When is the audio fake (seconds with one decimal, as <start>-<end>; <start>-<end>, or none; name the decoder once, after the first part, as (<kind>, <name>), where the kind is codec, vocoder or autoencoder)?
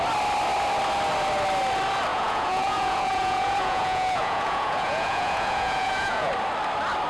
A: 2.1-6.3 (vocoder, Vocos)